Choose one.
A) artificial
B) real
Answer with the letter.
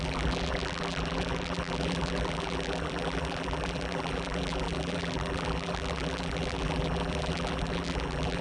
A